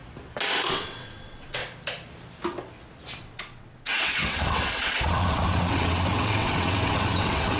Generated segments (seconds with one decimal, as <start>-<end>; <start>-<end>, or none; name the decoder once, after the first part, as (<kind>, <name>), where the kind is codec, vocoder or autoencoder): 0.7-1.6 (vocoder, WaveNeXt); 3.2-7.6